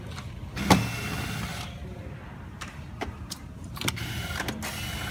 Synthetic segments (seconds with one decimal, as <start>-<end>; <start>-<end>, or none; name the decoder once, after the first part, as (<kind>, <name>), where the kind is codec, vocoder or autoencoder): 1.5-3.9 (vocoder, BigVGAN v2)